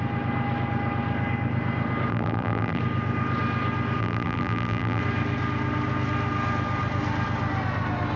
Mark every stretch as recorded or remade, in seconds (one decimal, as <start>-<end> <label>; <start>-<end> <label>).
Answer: 0.0-2.1 recorded; 2.1-2.8 remade; 2.8-4.0 recorded; 4.0-5.0 remade; 5.0-8.2 recorded